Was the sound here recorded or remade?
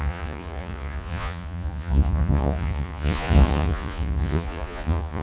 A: remade